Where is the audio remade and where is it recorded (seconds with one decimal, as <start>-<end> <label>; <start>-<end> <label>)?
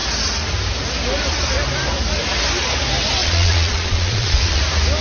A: 0.0-3.2 recorded; 3.2-4.6 remade; 4.6-5.0 recorded